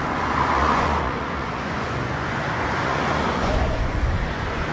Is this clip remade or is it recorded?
remade